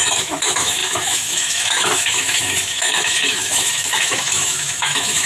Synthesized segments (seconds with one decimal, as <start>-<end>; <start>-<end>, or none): 0.0-5.3